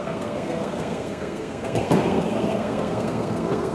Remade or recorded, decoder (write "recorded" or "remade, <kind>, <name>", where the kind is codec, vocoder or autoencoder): remade, codec, SNAC